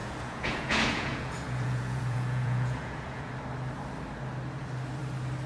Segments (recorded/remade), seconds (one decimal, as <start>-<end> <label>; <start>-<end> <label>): 0.0-3.3 remade; 3.3-5.5 recorded

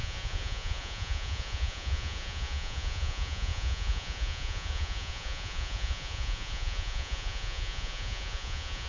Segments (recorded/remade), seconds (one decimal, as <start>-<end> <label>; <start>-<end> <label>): 0.0-8.9 remade